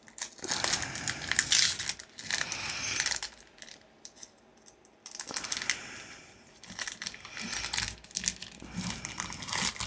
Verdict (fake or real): real